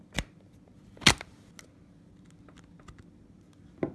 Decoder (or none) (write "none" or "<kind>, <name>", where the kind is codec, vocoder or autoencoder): none